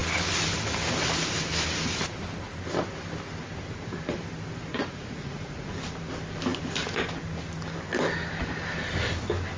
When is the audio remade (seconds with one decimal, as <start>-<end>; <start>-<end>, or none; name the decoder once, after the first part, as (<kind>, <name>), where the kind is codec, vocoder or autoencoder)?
4.7-5.7 (vocoder, Vocos)